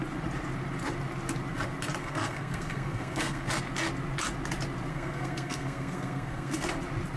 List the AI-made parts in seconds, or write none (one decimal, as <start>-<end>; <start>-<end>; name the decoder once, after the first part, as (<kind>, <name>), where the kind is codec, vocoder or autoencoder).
2.0-3.5 (codec, SNAC); 4.9-6.7